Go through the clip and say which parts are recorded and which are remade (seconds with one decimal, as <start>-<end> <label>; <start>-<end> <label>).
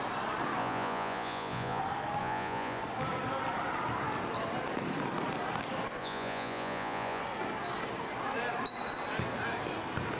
0.0-0.6 recorded; 0.6-1.8 remade; 1.8-2.2 recorded; 2.2-2.8 remade; 2.8-6.0 recorded; 6.0-7.2 remade; 7.2-10.2 recorded